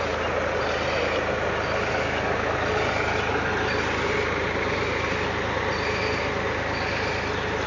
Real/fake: real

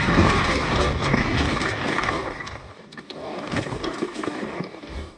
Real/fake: fake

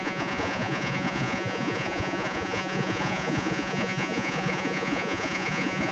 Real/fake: fake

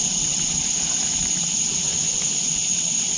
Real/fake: real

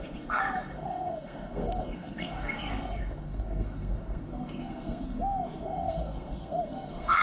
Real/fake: fake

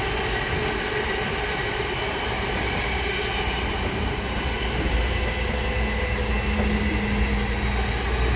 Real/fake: real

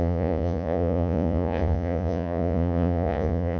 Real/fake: fake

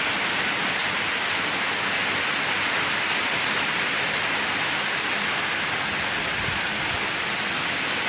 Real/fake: real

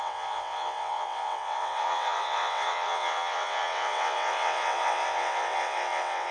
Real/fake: fake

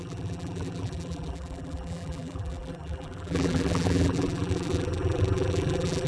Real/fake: fake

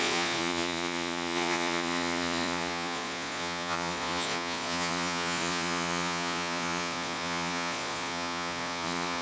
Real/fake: fake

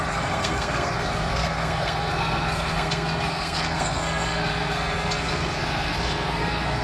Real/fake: fake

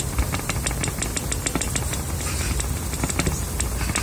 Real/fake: real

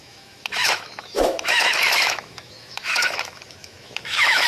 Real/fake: fake